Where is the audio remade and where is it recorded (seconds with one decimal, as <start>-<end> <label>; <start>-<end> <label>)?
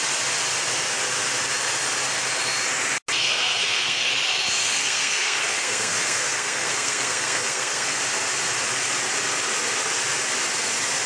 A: 0.0-3.2 recorded; 3.2-4.1 remade; 4.1-4.6 recorded; 4.6-8.0 remade; 8.0-11.1 recorded